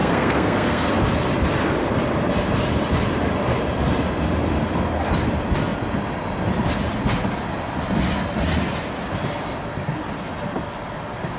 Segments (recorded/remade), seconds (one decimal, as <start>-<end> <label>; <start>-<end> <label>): 0.0-0.9 remade; 0.9-11.4 recorded